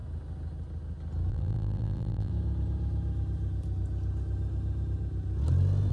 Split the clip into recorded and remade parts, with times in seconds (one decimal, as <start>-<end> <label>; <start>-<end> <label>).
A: 0.0-1.3 recorded; 1.3-2.3 remade; 2.3-5.9 recorded